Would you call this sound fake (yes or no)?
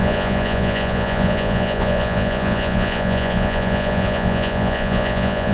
yes